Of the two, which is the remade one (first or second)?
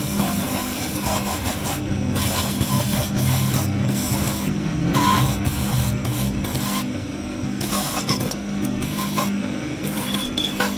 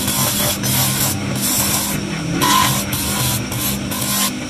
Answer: first